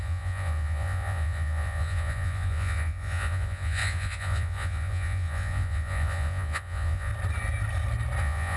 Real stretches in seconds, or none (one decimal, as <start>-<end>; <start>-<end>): 7.1-8.2